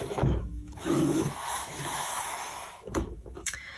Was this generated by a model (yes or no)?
yes